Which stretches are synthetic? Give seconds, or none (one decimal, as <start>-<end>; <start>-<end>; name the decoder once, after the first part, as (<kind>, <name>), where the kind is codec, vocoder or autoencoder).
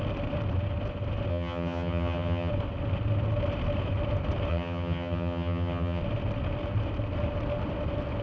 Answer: 1.3-2.5 (vocoder, HiFi-GAN); 4.5-6.0